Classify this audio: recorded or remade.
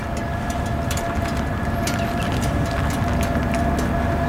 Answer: recorded